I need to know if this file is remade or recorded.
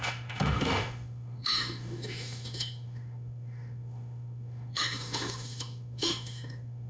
remade